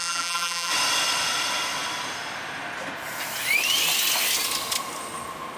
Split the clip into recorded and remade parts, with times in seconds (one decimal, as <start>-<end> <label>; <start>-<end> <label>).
0.0-0.7 remade; 0.7-5.6 recorded